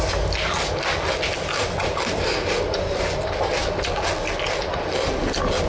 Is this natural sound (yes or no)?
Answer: yes